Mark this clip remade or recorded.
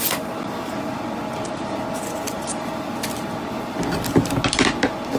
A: recorded